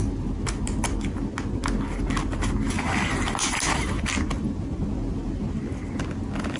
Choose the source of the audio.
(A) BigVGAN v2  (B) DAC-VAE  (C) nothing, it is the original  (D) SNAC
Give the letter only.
C